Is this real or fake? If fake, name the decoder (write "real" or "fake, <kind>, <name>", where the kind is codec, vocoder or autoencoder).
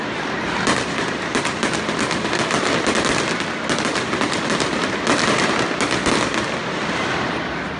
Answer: real